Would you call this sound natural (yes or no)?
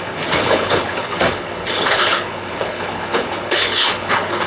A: no